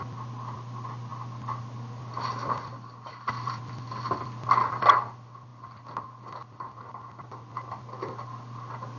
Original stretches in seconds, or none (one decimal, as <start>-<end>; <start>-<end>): 0.0-9.0